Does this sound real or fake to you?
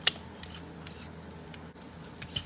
real